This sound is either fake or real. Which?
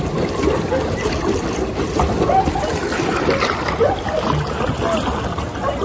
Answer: real